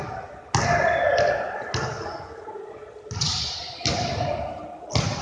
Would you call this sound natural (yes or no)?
yes